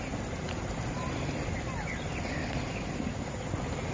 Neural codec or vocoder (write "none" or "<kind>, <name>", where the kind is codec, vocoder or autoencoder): none